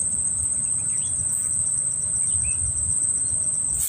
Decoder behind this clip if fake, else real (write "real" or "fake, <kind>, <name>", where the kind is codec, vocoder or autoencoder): real